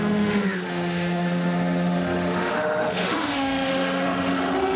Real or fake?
fake